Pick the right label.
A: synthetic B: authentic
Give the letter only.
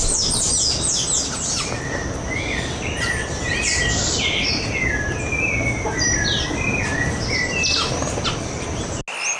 B